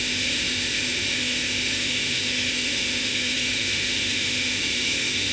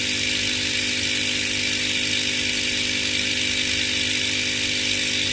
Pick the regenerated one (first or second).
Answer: first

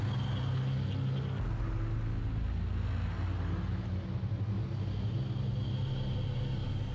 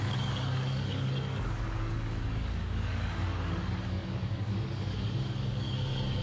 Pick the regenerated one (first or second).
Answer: second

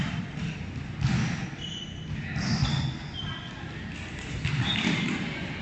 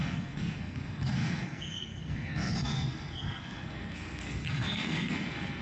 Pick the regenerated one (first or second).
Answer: second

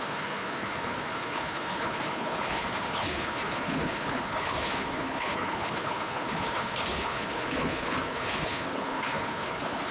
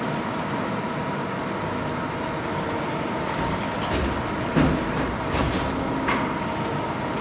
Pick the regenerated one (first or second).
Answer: first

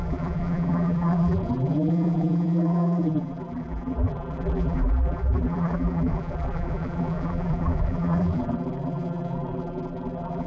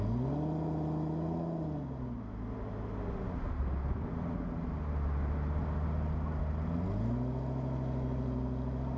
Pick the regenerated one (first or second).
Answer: first